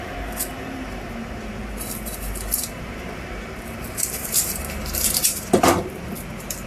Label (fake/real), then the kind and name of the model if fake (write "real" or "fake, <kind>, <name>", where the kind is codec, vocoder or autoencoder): fake, vocoder, BigVGAN v2